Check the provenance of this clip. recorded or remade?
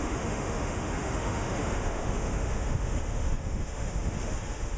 remade